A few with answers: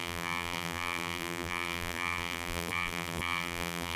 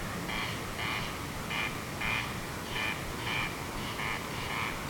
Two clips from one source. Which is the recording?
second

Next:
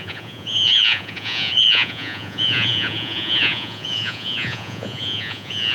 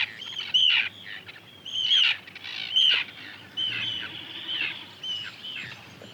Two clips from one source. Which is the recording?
second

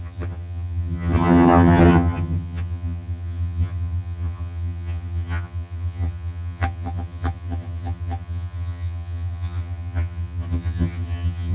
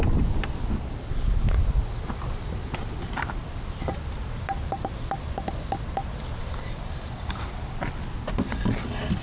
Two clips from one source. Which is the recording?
second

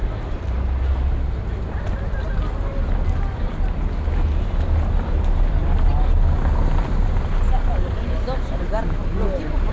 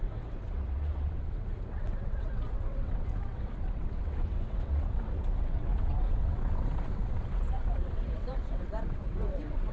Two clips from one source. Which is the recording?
first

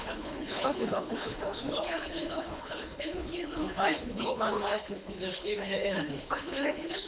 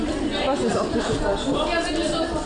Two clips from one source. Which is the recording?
second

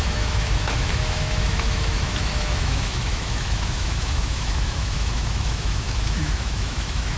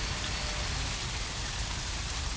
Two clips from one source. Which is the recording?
second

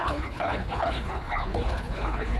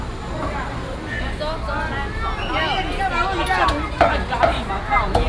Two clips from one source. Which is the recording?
second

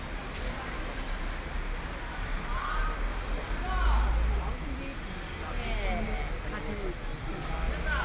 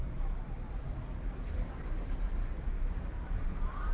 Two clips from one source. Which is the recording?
first